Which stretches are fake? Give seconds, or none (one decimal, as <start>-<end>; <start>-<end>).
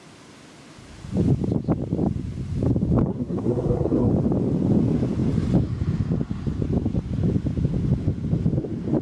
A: 3.1-4.1